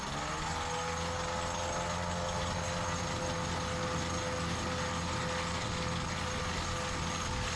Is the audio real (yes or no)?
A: yes